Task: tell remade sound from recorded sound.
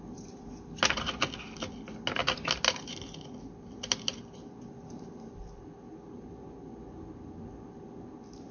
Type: recorded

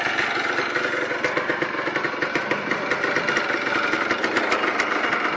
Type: recorded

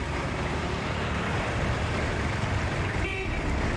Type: remade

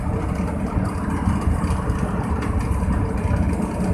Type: recorded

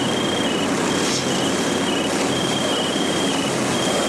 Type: recorded